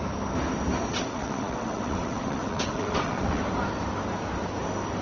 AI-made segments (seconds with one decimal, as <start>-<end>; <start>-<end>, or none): 0.9-3.4

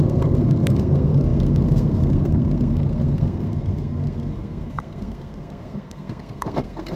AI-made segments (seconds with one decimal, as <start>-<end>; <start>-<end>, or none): 0.0-7.0

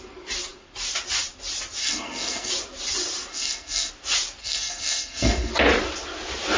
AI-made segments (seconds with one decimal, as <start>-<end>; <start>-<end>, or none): 1.8-2.5; 3.3-3.9; 4.4-5.5

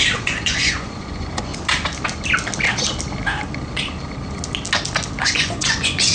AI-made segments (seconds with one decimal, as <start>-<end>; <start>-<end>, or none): 0.0-1.5; 5.2-6.1

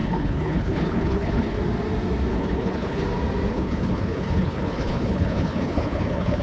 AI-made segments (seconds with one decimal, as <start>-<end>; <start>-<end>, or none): 0.0-1.6; 2.3-3.0; 3.5-6.4

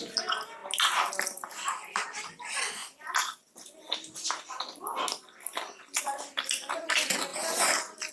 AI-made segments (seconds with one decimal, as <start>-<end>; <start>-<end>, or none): none

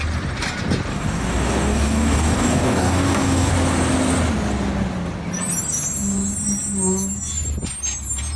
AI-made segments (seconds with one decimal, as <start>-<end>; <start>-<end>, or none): 0.9-3.5

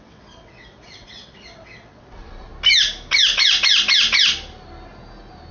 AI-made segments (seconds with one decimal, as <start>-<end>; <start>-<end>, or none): 0.0-2.5